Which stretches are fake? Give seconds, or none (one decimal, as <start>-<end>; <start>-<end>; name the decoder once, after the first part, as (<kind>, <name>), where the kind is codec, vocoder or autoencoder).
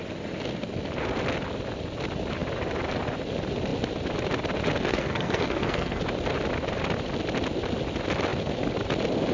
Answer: 4.9-6.0 (codec, SNAC)